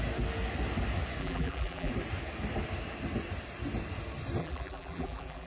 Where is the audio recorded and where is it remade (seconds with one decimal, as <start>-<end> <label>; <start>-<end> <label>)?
0.0-1.2 recorded; 1.2-1.9 remade; 1.9-4.4 recorded; 4.4-5.5 remade